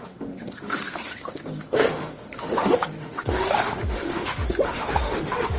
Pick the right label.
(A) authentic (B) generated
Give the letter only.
B